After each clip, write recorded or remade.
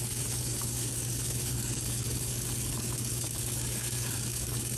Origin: remade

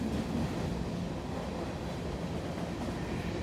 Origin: recorded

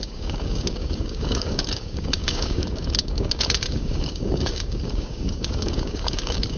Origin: remade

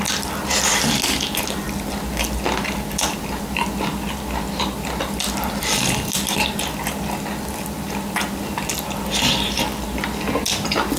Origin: recorded